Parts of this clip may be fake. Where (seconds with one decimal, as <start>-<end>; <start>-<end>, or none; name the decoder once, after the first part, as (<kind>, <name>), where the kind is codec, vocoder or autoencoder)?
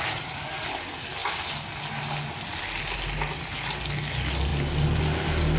none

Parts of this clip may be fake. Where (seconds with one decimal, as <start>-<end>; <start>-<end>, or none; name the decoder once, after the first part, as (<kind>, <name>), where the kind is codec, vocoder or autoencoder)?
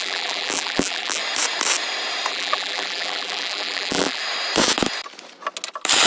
0.0-1.2 (vocoder, BigVGAN v2); 2.3-4.2